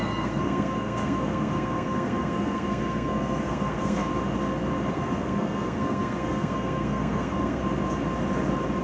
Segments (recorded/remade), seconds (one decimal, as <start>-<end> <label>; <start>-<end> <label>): 0.0-4.1 remade; 4.1-4.9 recorded; 4.9-7.6 remade; 7.6-8.8 recorded